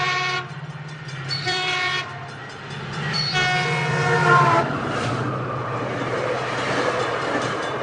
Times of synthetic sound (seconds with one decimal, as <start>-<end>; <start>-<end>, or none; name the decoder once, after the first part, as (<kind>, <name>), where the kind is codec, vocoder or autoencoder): 0.0-2.4 (vocoder, BigVGAN v2); 3.9-7.8